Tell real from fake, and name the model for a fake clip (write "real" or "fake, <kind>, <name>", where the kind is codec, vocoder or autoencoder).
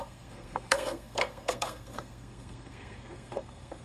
fake, codec, SNAC